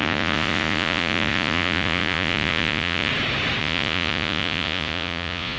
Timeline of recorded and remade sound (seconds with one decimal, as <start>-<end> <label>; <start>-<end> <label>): 0.0-3.1 remade; 3.1-3.6 recorded; 3.6-5.6 remade